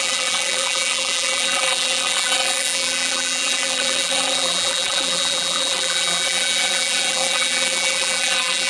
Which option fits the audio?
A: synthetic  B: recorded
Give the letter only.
A